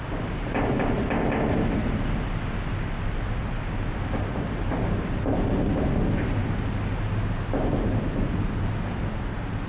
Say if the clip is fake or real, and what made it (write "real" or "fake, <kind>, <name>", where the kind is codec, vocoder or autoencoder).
real